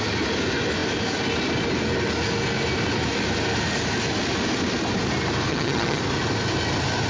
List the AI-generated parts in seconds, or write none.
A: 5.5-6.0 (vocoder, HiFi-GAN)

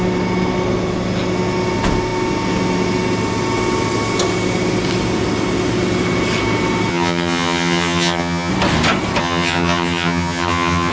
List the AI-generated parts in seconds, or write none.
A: 6.9-8.5 (vocoder, HiFi-GAN); 9.2-10.9

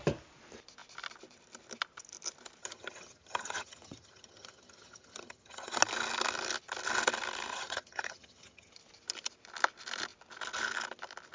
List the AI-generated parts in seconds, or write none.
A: 2.6-5.8 (vocoder, HiFi-GAN); 7.5-8.7

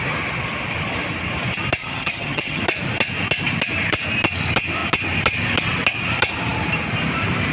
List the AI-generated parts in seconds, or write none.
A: 1.8-2.6 (vocoder, HiFi-GAN)